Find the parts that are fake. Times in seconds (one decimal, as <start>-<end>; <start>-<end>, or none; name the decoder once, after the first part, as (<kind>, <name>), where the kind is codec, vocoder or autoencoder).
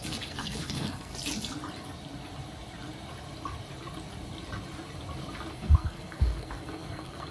0.0-1.1 (codec, SNAC); 5.5-7.3